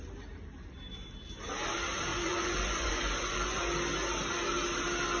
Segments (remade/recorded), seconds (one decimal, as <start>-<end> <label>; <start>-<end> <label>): 0.0-2.1 recorded; 2.1-3.6 remade; 3.6-5.2 recorded